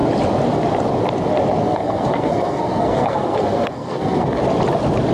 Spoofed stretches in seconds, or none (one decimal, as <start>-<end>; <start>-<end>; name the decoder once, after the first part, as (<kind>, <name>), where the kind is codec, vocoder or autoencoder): 1.6-4.4 (codec, SNAC)